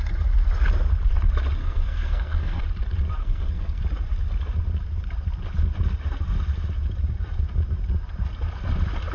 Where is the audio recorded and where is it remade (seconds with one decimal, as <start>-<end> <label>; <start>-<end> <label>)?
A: 0.0-1.6 recorded; 1.6-2.6 remade; 2.6-3.2 recorded; 3.2-3.8 remade; 3.8-9.1 recorded